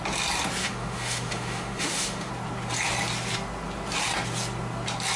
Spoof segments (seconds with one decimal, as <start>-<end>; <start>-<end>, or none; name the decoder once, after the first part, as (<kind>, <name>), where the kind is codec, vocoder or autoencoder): 0.6-2.3 (autoencoder, DAC-VAE)

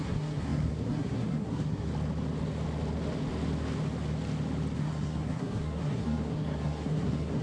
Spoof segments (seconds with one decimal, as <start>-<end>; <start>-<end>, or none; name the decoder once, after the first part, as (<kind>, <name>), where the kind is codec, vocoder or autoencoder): 0.0-1.9 (codec, SNAC); 4.8-7.4

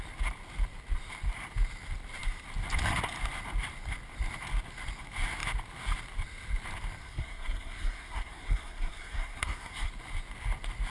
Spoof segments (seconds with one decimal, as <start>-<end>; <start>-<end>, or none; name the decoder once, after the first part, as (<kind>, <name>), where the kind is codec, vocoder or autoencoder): 7.0-9.9 (codec, SNAC)